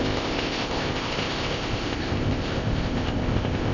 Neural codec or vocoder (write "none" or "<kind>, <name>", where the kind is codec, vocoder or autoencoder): codec, ZipCodec